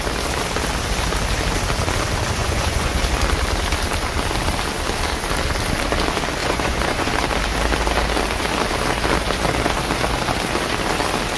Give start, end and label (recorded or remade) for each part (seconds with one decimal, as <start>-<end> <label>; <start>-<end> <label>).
0.0-2.4 recorded; 2.4-3.0 remade; 3.0-6.4 recorded; 6.4-7.1 remade; 7.1-11.4 recorded